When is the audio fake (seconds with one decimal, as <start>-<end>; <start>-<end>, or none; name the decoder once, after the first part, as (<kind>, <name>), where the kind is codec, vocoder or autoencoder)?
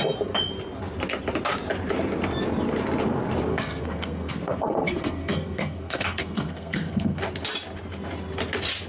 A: 3.5-7.2 (codec, SNAC)